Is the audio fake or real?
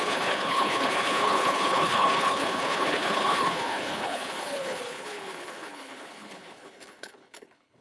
fake